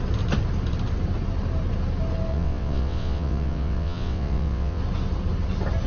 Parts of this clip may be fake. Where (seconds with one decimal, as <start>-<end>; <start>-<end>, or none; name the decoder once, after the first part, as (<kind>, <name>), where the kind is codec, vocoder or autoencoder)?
2.3-4.8 (vocoder, WaveNeXt)